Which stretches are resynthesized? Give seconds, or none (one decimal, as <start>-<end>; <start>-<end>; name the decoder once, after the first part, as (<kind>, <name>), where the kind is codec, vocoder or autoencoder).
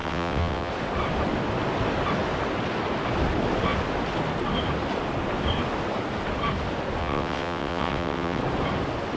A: 0.0-0.7 (vocoder, WaveNeXt); 7.0-8.4